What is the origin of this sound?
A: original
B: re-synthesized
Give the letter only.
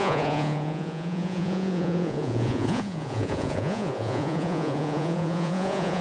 B